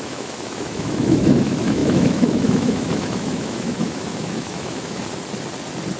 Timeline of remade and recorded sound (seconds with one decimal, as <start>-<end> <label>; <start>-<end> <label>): 0.0-5.0 remade; 5.0-6.0 recorded